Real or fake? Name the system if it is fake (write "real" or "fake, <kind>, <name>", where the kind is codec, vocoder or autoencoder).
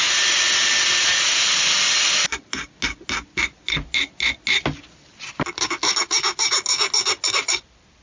real